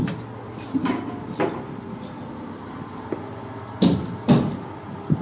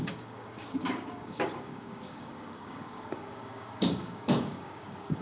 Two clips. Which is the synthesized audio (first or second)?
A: second